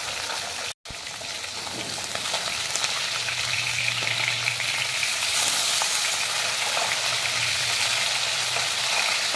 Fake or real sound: real